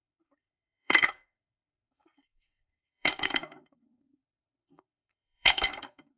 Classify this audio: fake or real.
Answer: fake